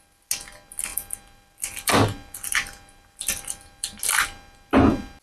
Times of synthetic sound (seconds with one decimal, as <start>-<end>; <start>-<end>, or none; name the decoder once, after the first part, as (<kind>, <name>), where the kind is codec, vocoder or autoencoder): 0.9-4.0 (vocoder, BigVGAN v2)